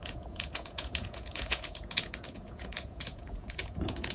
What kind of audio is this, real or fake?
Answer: fake